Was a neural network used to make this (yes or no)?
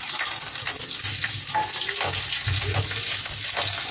no